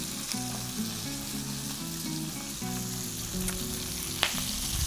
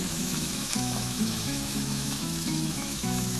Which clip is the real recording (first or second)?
first